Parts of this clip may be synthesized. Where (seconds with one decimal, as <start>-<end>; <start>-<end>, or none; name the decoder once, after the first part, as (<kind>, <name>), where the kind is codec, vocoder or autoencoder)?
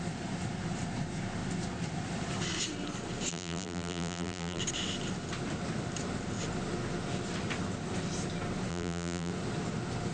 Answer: 3.3-4.6 (vocoder, BigVGAN v2); 8.7-9.3